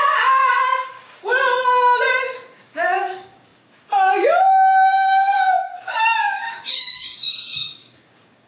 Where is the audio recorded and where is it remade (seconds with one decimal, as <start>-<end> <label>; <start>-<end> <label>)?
0.0-1.3 remade; 1.3-2.5 recorded; 2.5-8.5 remade